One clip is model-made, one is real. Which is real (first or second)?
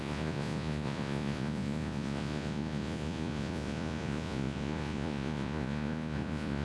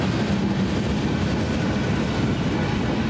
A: second